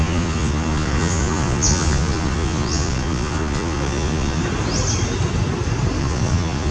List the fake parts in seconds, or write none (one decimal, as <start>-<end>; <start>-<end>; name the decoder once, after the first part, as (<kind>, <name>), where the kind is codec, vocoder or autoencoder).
0.0-4.4 (vocoder, Vocos); 6.0-6.7